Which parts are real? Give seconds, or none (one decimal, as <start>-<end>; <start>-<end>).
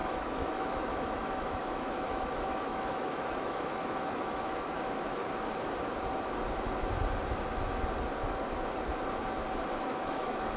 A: 5.2-9.7